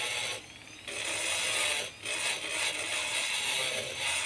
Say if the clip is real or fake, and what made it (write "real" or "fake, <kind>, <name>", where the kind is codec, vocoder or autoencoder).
real